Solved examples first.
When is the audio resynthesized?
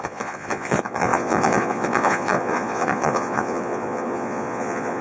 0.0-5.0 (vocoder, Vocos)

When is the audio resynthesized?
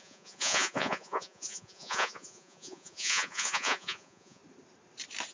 0.0-4.4 (vocoder, Vocos)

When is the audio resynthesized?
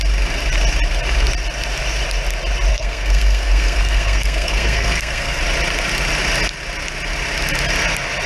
2.7-5.4 (codec, SNAC)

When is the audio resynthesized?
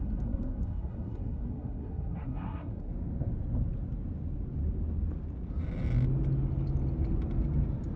0.0-2.9 (codec, SNAC)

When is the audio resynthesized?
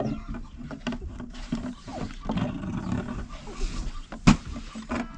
none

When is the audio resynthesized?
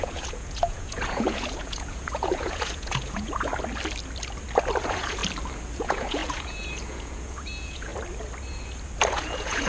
0.0-3.5 (vocoder, Vocos); 4.8-5.2; 5.8-7.9; 9.1-9.7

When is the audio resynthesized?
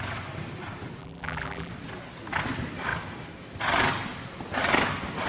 1.0-1.7 (vocoder, BigVGAN v2)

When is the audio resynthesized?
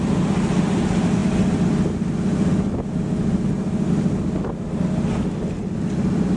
none